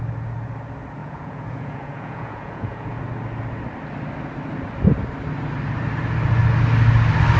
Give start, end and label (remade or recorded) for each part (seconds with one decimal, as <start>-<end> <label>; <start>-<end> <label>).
0.0-1.0 recorded; 1.0-3.0 remade; 3.0-7.4 recorded